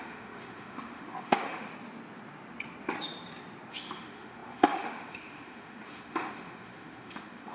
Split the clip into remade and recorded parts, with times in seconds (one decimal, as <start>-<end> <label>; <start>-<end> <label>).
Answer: 0.0-1.7 remade; 1.7-3.7 recorded; 3.7-7.5 remade